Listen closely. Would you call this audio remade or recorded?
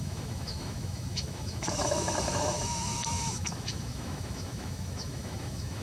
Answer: remade